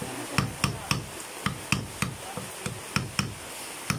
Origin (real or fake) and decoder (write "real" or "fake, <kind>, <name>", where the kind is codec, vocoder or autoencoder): real